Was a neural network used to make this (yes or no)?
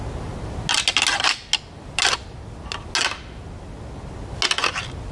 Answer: no